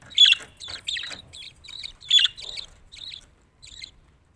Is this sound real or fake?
real